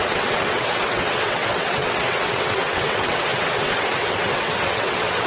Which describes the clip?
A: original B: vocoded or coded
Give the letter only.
B